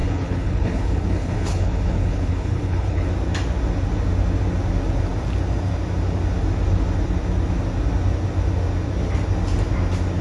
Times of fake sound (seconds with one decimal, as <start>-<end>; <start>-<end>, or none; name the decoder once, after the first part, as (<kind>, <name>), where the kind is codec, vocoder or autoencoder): 0.0-3.1 (codec, HILCodec)